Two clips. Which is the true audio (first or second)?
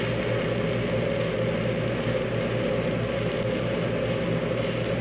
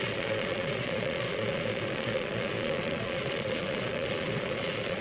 first